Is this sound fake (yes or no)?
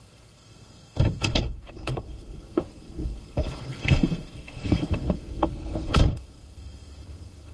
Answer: yes